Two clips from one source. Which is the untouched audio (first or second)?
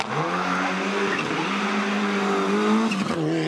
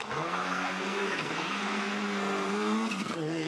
first